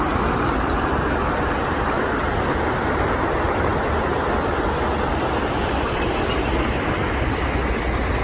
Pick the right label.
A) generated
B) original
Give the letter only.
B